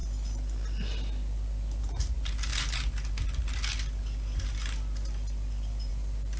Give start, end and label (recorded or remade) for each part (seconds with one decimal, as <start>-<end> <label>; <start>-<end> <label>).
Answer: 0.0-1.8 recorded; 1.8-2.5 remade; 2.5-5.9 recorded; 5.9-6.4 remade